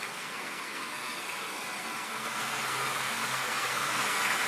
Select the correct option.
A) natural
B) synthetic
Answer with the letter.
B